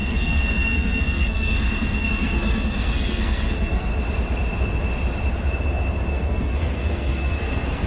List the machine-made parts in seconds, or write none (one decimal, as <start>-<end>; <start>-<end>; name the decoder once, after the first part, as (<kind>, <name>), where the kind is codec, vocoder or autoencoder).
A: 0.0-3.9 (codec, SNAC); 6.1-7.9